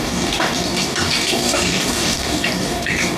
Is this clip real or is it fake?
fake